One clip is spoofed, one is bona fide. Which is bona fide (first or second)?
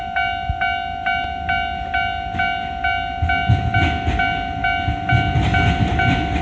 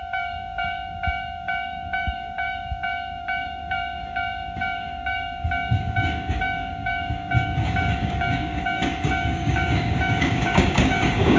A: first